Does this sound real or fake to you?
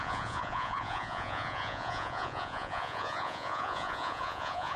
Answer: fake